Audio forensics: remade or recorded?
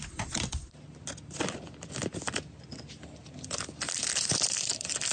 recorded